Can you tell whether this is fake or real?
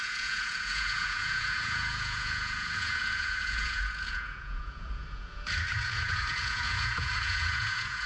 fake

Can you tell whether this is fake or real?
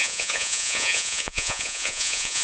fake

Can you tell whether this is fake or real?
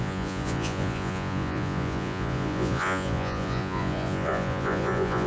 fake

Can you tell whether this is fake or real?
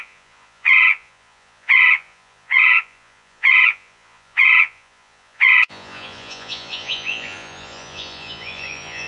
fake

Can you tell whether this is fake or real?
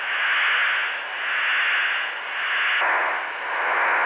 real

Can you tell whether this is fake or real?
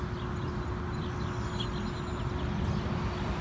real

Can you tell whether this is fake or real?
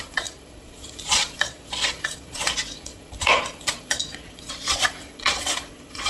fake